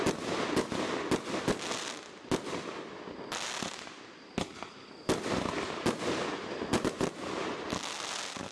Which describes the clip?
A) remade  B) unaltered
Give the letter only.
B